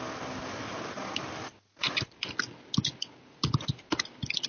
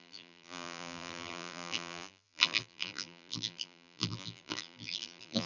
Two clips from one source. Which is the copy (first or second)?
second